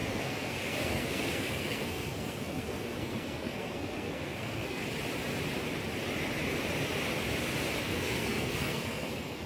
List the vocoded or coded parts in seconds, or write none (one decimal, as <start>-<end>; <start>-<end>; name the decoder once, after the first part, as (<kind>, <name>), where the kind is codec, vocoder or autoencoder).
0.0-4.8 (codec, SNAC); 7.8-9.5